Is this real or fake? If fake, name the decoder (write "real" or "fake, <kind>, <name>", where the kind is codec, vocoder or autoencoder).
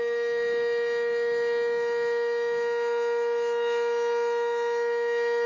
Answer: real